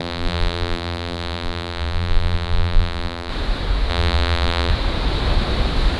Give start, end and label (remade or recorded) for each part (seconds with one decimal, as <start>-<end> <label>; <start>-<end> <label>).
0.0-3.3 remade; 3.3-3.9 recorded; 3.9-4.7 remade; 4.7-6.0 recorded

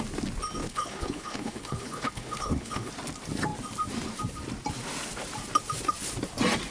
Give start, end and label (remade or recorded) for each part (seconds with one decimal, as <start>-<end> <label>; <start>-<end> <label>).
0.0-0.6 recorded; 0.6-2.9 remade; 2.9-6.7 recorded

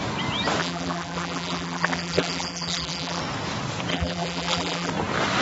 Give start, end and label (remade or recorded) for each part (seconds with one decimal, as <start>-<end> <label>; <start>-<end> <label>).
0.0-0.6 recorded; 0.6-3.2 remade; 3.2-3.9 recorded; 3.9-4.9 remade; 4.9-5.4 recorded